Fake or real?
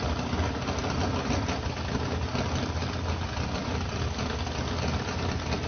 real